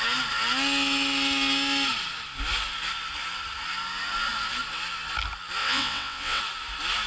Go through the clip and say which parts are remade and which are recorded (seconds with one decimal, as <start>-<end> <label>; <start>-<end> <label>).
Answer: 0.0-5.6 recorded; 5.6-6.4 remade; 6.4-7.1 recorded